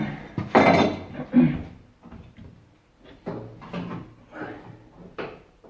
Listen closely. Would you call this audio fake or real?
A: real